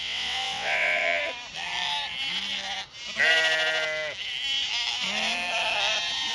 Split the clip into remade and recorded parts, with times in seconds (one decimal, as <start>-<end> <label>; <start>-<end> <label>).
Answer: 0.0-1.2 remade; 1.2-6.3 recorded